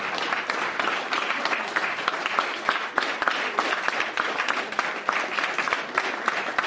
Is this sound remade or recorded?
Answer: recorded